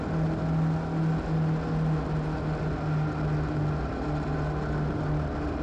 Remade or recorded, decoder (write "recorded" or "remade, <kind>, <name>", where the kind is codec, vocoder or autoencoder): recorded